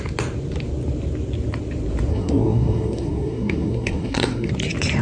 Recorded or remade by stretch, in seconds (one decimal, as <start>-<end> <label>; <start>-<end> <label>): 0.0-2.1 recorded; 2.1-4.5 remade; 4.5-5.0 recorded